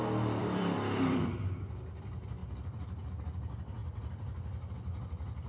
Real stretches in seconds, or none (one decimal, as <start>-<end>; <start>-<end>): 0.0-0.4; 1.6-5.5